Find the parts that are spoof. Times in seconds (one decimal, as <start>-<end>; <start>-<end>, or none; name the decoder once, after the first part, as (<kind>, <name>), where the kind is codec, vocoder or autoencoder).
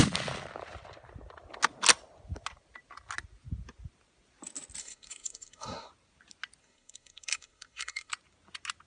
4.8-5.9 (codec, SNAC); 6.6-8.1